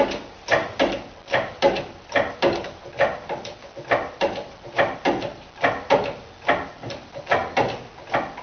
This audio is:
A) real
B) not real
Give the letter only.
A